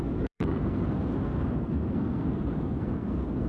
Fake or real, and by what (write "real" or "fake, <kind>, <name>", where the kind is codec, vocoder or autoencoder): fake, codec, SNAC